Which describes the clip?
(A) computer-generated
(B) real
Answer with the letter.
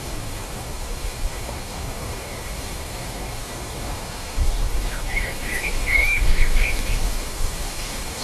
A